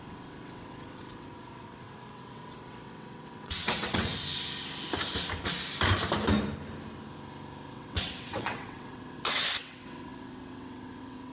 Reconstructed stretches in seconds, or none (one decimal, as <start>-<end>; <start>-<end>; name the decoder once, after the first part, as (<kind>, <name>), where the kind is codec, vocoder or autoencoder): 0.0-4.1 (vocoder, WaveNeXt); 7.7-11.3